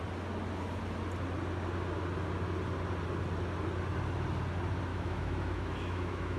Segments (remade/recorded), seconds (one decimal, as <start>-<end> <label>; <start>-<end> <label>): 0.0-4.9 recorded; 4.9-6.4 remade